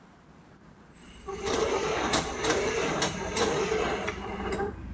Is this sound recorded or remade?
remade